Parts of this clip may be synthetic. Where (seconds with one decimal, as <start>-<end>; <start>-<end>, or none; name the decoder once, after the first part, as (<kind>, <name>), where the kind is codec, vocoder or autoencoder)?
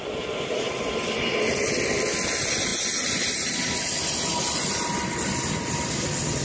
none